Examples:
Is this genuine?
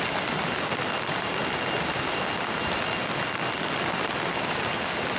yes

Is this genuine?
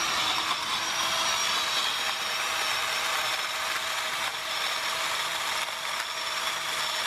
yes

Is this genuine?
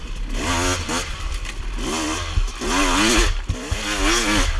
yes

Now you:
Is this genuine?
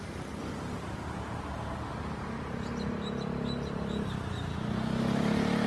yes